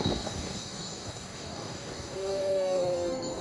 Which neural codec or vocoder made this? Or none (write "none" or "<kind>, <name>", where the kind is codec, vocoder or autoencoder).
codec, DAC